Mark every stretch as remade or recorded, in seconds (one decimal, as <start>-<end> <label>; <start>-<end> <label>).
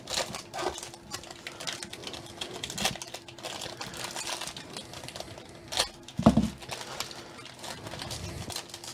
0.0-8.9 recorded